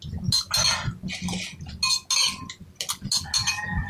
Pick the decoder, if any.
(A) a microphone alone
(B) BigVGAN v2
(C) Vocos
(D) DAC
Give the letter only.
A